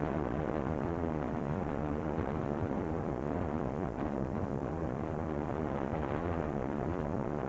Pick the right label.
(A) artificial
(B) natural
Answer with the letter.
A